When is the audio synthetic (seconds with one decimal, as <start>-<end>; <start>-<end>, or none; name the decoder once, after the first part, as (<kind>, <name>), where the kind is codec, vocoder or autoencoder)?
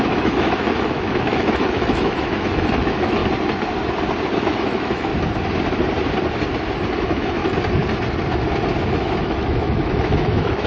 0.0-3.2 (autoencoder, DAC-VAE); 4.4-5.1; 7.0-7.4; 8.9-10.7